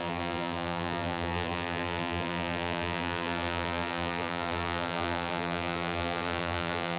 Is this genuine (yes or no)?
no